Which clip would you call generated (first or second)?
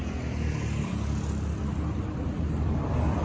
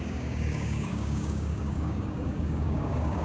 second